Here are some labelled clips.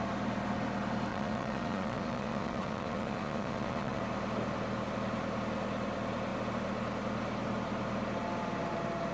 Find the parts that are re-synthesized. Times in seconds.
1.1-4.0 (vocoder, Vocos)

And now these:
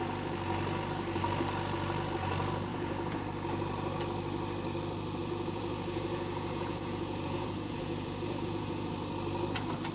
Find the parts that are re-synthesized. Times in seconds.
2.7-3.2 (vocoder, Vocos); 5.2-8.9

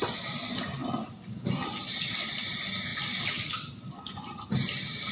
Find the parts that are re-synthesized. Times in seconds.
none